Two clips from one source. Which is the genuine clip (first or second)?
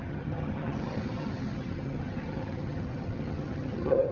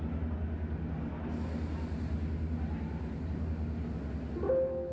second